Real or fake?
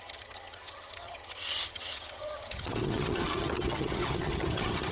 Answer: fake